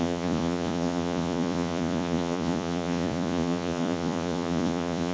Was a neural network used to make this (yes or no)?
yes